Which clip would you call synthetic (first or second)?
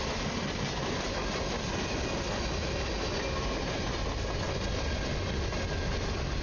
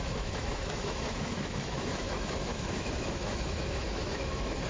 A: second